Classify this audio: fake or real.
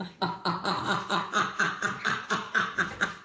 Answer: fake